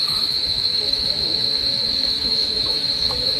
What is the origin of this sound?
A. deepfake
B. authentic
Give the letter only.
A